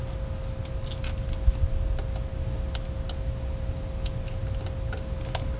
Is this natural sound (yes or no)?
yes